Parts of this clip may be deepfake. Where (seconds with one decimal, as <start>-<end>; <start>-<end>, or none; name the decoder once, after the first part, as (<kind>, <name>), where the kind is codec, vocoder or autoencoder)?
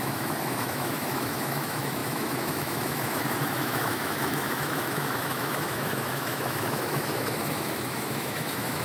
0.0-8.8 (autoencoder, DAC-VAE)